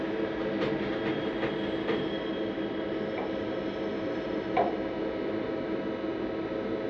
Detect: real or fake real